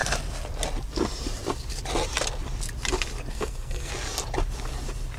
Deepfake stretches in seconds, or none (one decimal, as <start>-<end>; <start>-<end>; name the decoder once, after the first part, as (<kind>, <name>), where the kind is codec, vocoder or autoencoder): 3.3-3.9 (codec, SNAC)

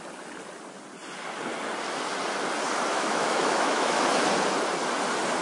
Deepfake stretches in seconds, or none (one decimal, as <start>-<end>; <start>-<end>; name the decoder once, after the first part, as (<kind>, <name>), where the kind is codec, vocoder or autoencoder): 2.9-4.1 (autoencoder, DAC-VAE)

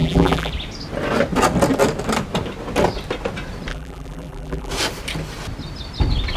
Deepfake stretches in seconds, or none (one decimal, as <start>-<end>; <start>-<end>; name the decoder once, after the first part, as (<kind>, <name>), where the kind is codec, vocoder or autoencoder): 0.0-0.5 (vocoder, BigVGAN v2); 3.7-4.7

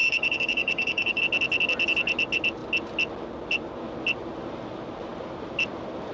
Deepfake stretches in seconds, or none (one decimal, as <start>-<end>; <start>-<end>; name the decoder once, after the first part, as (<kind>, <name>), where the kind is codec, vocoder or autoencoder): 0.0-1.2 (codec, DAC)

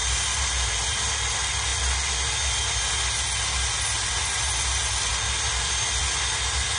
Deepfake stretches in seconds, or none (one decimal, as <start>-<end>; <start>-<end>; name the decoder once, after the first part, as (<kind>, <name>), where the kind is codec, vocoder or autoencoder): none

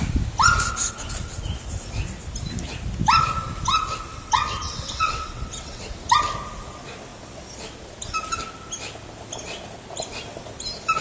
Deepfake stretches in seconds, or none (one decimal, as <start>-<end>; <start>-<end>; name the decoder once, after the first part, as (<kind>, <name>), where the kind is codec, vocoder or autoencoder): 4.1-5.8 (vocoder, WaveNeXt)